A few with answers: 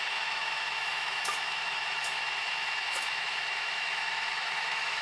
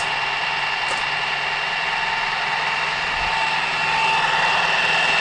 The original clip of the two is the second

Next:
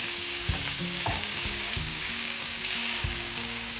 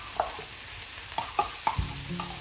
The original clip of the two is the second